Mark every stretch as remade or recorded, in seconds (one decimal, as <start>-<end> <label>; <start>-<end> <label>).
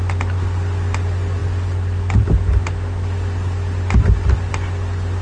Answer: 0.0-5.2 recorded